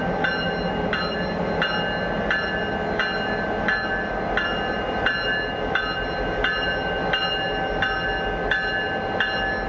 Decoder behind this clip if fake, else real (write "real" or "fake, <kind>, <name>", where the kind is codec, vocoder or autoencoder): real